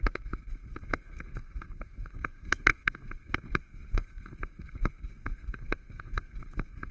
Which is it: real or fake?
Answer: fake